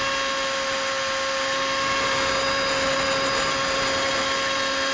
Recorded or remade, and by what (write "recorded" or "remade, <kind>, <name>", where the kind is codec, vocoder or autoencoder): recorded